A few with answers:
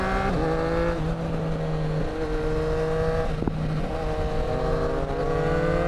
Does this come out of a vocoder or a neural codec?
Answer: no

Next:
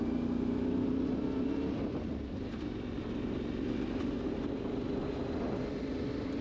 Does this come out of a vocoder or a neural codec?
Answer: yes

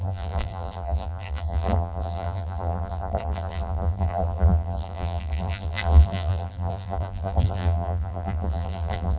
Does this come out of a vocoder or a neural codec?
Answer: yes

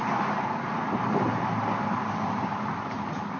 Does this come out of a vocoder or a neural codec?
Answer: yes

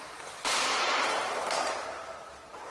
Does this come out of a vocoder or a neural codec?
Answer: yes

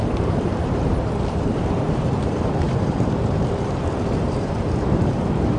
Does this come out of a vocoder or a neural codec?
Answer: yes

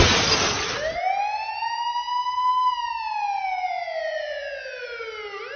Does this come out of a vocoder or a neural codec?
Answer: no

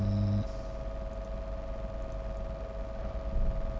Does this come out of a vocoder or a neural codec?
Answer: no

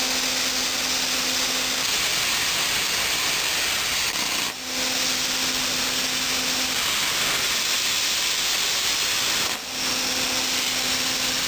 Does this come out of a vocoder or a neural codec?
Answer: no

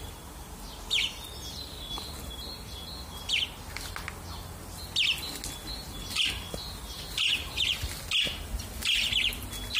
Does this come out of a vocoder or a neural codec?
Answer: no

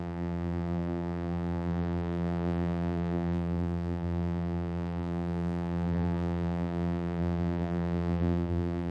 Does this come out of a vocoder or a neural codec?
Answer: yes